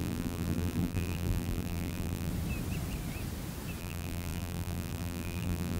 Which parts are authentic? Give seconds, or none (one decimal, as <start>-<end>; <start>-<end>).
2.3-3.8